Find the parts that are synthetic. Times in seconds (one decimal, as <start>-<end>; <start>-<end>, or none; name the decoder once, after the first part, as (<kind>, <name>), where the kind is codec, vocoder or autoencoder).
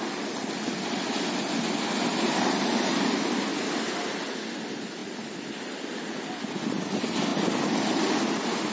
none